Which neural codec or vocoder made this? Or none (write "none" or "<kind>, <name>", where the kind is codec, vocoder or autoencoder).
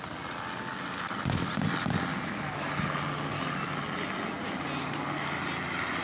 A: none